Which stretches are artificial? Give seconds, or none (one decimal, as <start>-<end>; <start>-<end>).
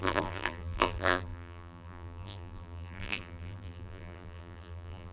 0.0-5.1